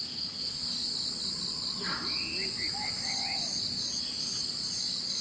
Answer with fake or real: real